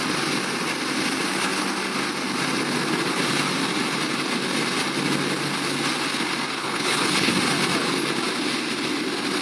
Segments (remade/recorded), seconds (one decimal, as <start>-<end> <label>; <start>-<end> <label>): 0.0-6.6 recorded; 6.6-7.3 remade; 7.3-9.4 recorded